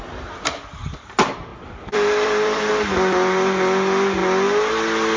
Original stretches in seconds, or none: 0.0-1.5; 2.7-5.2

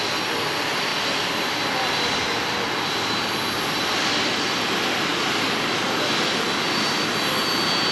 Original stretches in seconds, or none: 0.0-7.9